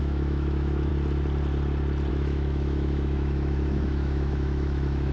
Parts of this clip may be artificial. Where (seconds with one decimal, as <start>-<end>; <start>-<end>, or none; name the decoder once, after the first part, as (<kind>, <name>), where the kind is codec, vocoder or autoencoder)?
0.0-0.9 (autoencoder, DAC-VAE); 2.1-5.1